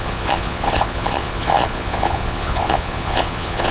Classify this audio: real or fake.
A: fake